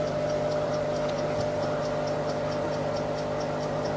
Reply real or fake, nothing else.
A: real